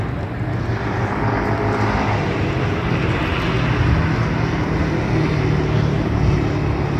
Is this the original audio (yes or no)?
yes